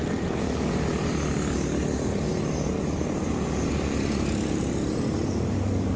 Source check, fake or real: real